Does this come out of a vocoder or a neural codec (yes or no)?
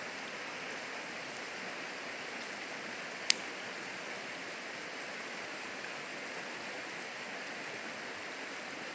no